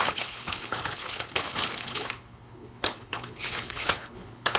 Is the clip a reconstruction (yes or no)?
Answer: yes